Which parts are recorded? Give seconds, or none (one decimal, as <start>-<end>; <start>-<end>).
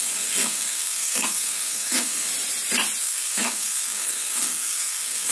2.3-3.0